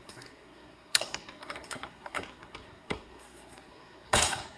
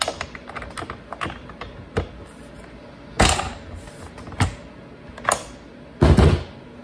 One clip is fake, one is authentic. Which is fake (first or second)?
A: first